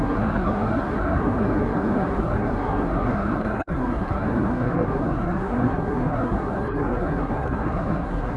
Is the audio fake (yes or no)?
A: yes